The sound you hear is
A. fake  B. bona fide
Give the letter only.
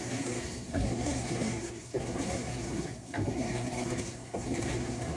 A